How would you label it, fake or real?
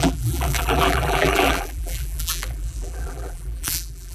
fake